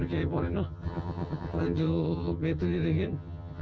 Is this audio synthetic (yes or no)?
yes